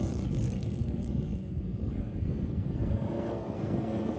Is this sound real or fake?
fake